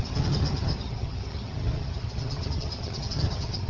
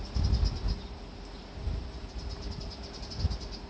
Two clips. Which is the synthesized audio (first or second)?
first